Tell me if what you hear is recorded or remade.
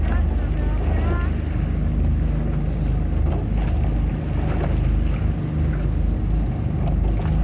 recorded